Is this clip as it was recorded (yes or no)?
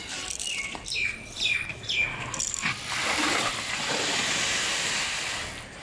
no